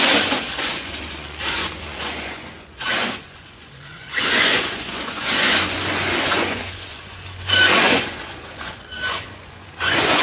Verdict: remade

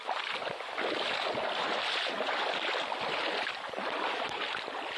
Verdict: recorded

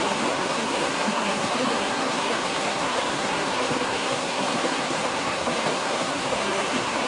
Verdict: remade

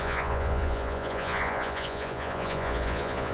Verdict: remade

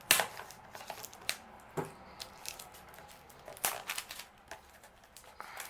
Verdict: recorded